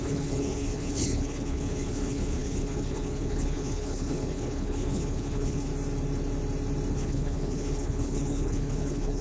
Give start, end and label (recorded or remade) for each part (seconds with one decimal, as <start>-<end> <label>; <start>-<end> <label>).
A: 0.0-5.7 remade; 5.7-6.9 recorded; 6.9-9.2 remade